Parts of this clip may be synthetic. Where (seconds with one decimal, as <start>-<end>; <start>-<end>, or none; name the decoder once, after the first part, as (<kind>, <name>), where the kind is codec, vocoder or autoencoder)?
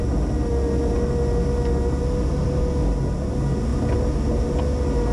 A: none